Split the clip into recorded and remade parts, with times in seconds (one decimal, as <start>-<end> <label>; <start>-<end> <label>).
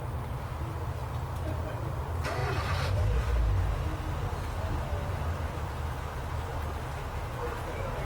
0.0-1.0 recorded; 1.0-1.7 remade; 1.7-8.0 recorded